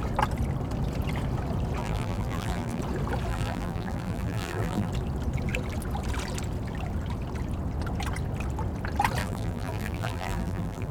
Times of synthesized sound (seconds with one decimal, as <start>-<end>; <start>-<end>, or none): 1.8-2.8; 3.3-4.9; 9.2-10.9